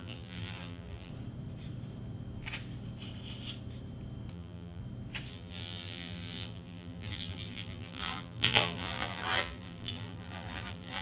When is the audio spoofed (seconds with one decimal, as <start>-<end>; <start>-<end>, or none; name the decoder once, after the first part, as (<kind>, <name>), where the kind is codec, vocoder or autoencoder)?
0.0-1.1 (vocoder, BigVGAN v2); 4.3-4.8; 5.3-11.0